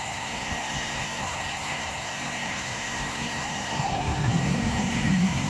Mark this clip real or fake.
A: fake